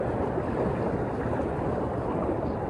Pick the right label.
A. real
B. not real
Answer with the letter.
A